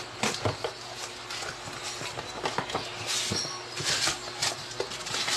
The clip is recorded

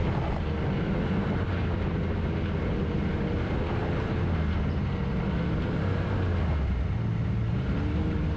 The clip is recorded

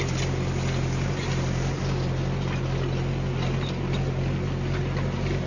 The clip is recorded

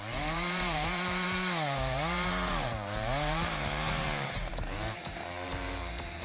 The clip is remade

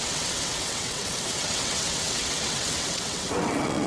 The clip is remade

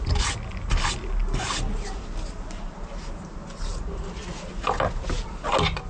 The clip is recorded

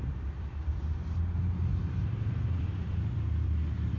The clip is remade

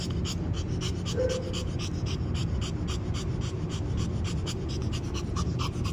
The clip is recorded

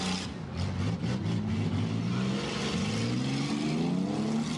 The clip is recorded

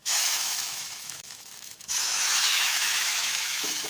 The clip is remade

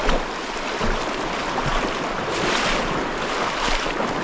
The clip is recorded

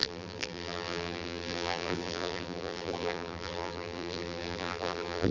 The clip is remade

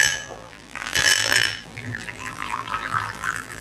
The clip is remade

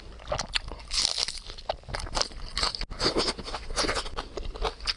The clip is recorded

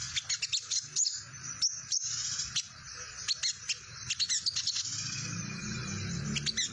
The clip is recorded